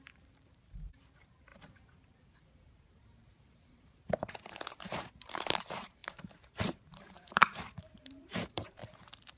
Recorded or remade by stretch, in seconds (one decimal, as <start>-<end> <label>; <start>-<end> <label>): 0.0-8.8 remade; 8.8-9.4 recorded